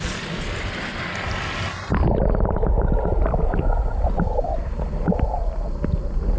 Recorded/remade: recorded